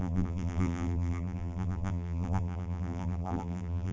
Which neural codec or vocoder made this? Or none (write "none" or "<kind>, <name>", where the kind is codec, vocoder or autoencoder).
vocoder, BigVGAN v2